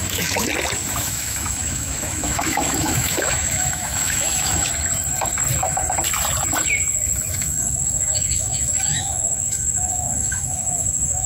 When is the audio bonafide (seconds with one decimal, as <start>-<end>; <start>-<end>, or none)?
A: 0.5-1.0; 4.7-7.3